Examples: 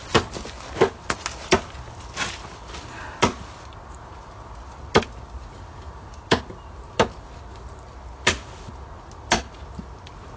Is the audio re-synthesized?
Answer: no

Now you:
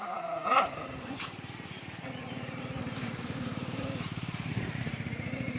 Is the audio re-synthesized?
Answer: yes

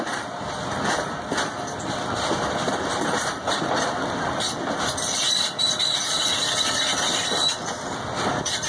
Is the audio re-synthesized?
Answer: yes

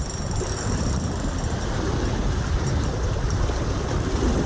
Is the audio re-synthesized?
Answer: no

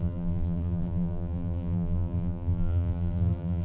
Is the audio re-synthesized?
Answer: yes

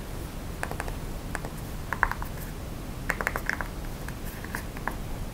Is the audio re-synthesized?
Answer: no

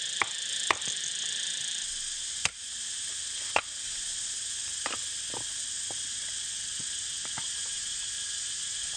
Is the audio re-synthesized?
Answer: no